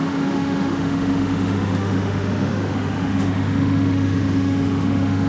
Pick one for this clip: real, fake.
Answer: fake